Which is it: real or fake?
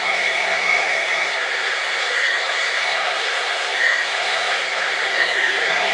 fake